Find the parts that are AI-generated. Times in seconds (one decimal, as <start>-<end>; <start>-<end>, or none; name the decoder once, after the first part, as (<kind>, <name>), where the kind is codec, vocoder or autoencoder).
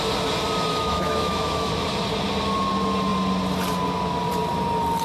0.7-1.7 (autoencoder, DAC-VAE)